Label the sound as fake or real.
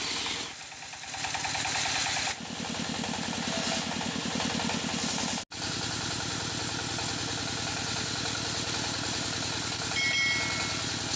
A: real